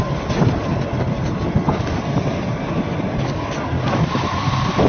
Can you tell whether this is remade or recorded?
recorded